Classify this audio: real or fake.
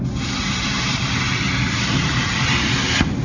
real